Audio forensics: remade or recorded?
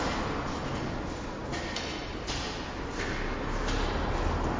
recorded